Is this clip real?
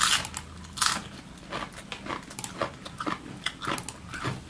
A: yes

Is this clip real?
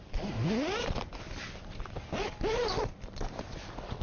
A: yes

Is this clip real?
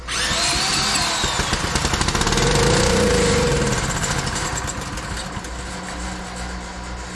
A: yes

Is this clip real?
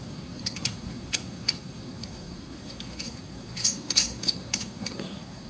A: no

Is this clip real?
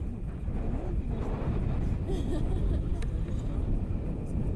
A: yes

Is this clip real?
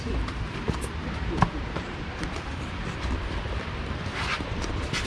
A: no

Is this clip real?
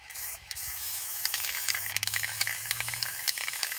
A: no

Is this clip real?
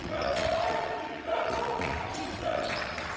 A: no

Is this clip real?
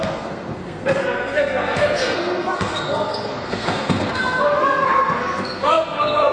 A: no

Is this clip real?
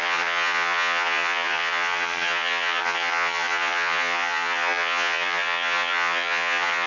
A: no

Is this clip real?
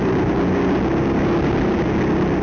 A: yes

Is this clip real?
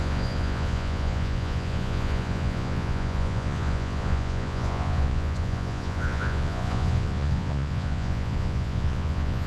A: no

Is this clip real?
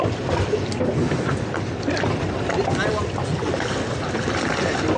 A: yes